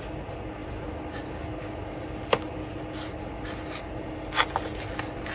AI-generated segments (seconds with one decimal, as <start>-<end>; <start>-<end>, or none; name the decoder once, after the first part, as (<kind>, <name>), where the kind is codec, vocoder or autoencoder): none

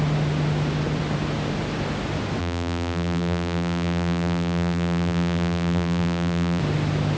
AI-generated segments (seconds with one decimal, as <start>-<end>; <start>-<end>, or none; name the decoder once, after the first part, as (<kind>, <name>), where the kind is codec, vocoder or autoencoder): 2.4-6.6 (vocoder, BigVGAN v2)

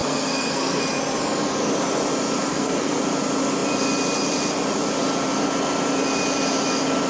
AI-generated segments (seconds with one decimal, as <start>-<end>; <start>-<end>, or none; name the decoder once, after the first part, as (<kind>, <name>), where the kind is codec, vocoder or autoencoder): 0.0-0.8 (codec, SNAC); 2.5-3.0

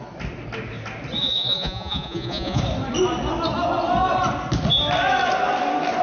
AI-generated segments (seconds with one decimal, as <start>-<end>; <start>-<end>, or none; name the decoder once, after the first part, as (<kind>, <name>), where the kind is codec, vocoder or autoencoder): 1.2-2.6 (vocoder, Vocos)

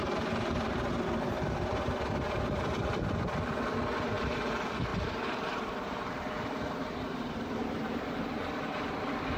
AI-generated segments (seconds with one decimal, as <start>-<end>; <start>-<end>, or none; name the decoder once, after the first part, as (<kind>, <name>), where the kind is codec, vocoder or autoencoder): 0.0-1.0 (vocoder, BigVGAN v2); 4.9-9.4

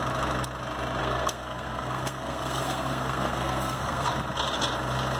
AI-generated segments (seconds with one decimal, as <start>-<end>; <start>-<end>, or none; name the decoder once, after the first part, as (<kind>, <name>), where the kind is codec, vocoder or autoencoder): 1.0-4.1 (codec, SNAC)

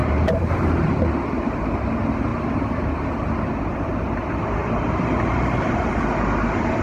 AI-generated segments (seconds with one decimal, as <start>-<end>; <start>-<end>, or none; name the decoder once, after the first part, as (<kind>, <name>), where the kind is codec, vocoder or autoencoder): 0.0-0.9 (vocoder, BigVGAN v2); 2.3-2.9; 4.6-5.9

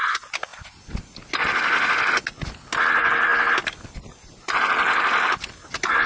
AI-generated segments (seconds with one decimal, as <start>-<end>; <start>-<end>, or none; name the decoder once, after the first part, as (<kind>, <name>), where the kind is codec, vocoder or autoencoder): none